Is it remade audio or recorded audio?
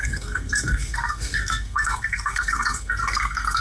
remade